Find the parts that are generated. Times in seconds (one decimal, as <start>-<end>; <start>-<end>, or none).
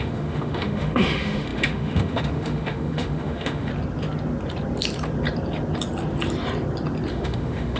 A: 0.0-3.7; 7.1-7.8